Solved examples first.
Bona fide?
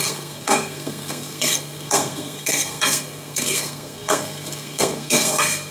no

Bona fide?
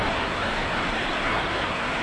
no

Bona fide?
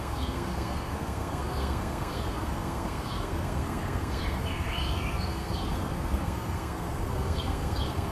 no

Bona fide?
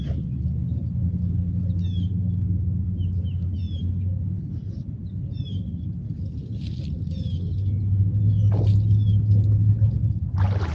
yes